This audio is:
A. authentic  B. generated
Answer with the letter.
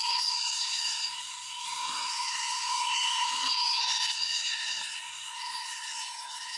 B